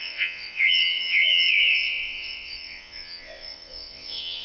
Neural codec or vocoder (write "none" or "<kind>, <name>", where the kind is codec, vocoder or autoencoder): vocoder, WaveNeXt